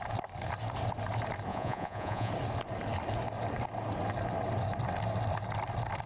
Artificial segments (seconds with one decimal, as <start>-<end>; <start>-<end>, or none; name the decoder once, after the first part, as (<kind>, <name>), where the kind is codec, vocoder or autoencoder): 1.5-2.3 (vocoder, Vocos)